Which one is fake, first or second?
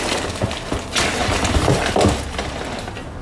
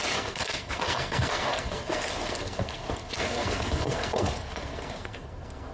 second